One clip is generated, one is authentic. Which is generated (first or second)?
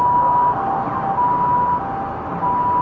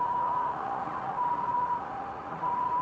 second